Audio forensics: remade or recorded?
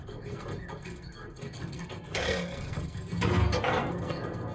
remade